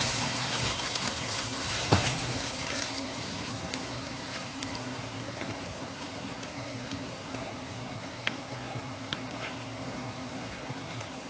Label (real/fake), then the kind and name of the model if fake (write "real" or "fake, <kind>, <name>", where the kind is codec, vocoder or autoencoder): fake, codec, SNAC